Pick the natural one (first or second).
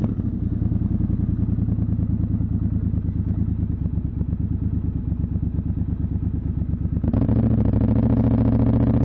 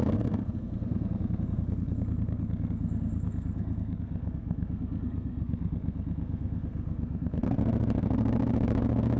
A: first